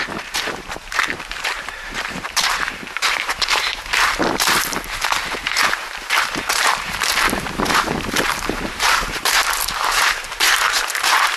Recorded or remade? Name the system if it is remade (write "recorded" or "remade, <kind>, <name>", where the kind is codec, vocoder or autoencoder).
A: remade, vocoder, BigVGAN v2